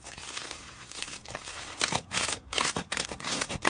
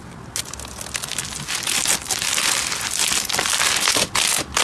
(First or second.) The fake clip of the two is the first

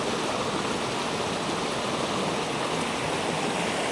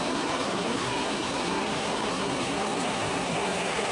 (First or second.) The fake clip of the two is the second